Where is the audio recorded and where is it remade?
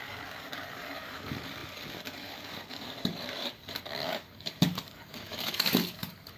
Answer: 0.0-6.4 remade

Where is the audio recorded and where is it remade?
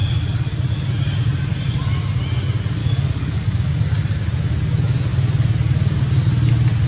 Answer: 0.0-2.8 recorded; 2.8-3.8 remade; 3.8-6.9 recorded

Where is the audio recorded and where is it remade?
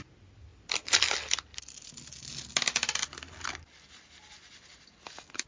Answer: 0.0-5.5 recorded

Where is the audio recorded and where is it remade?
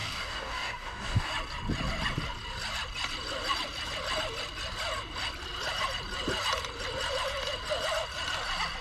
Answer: 0.0-1.3 remade; 1.3-8.8 recorded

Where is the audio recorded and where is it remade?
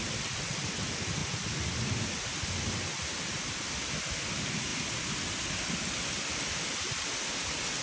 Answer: 0.0-7.8 recorded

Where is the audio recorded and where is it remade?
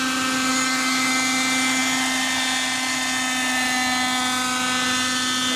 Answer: 0.0-0.5 recorded; 0.5-1.1 remade; 1.1-5.6 recorded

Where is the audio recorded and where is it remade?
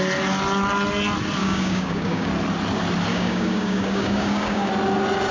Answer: 0.0-1.4 recorded; 1.4-2.3 remade; 2.3-3.1 recorded; 3.1-4.7 remade; 4.7-5.3 recorded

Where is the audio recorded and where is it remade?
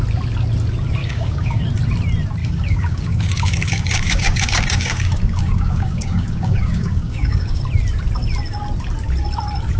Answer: 0.0-1.0 recorded; 1.0-1.6 remade; 1.6-2.4 recorded; 2.4-7.6 remade; 7.6-9.8 recorded